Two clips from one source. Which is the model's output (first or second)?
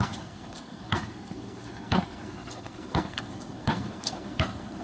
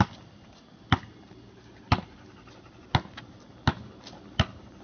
first